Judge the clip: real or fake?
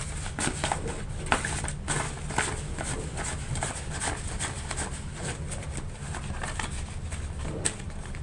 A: real